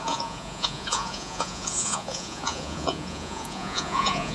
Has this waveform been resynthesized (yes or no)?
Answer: yes